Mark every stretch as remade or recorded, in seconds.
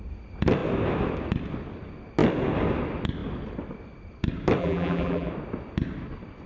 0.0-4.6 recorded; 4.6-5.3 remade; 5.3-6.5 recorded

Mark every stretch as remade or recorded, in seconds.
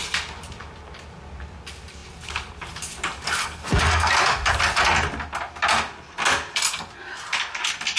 0.0-3.4 recorded; 3.4-4.1 remade; 4.1-8.0 recorded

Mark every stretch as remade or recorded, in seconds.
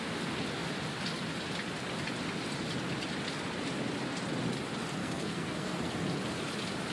0.0-5.0 recorded; 5.0-5.9 remade; 5.9-6.9 recorded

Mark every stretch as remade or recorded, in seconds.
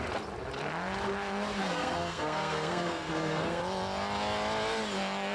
0.0-1.6 recorded; 1.6-3.6 remade; 3.6-5.3 recorded